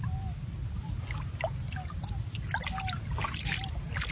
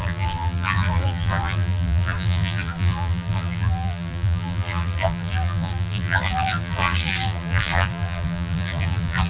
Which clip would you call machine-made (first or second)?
second